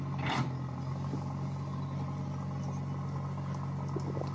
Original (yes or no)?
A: yes